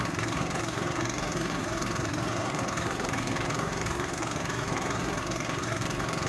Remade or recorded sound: remade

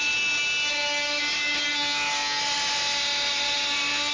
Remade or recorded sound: recorded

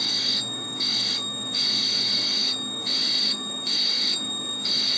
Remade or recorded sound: remade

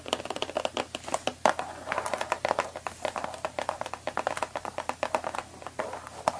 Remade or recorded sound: recorded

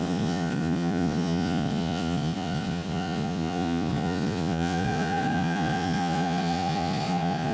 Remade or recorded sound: remade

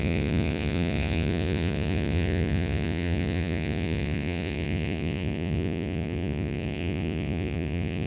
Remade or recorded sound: remade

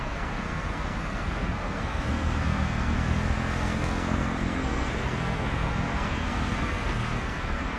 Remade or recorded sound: remade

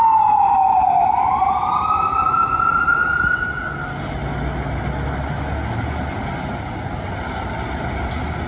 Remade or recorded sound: recorded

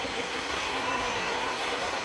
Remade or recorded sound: remade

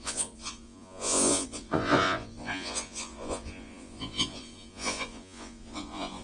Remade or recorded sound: remade